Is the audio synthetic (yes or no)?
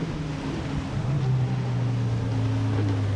no